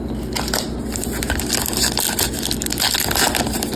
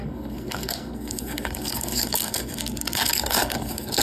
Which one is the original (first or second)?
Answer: first